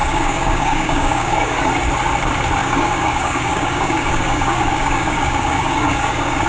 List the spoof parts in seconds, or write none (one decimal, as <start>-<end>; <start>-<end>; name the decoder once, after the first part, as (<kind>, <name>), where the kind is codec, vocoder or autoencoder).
0.0-1.6 (codec, DAC); 2.6-6.5